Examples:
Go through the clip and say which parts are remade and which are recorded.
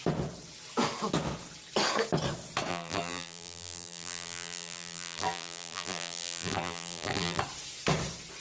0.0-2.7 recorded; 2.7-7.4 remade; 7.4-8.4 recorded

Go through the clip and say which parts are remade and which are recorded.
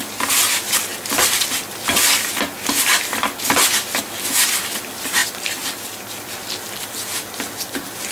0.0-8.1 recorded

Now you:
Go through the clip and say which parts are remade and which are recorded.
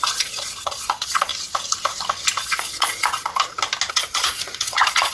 0.0-1.3 remade; 1.3-2.4 recorded; 2.4-3.3 remade; 3.3-3.9 recorded; 3.9-5.1 remade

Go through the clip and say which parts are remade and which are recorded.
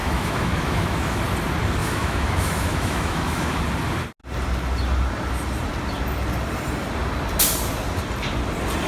0.0-1.2 remade; 1.2-1.8 recorded; 1.8-3.6 remade; 3.6-8.9 recorded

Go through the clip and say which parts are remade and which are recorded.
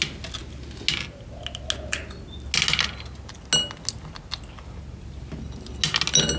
0.0-6.4 recorded